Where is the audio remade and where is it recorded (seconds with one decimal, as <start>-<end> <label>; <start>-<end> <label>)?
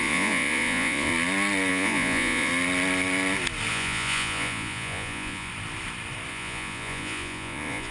0.0-1.1 remade; 1.1-1.7 recorded; 1.7-2.5 remade; 2.5-3.7 recorded; 3.7-5.5 remade; 5.5-6.3 recorded; 6.3-7.9 remade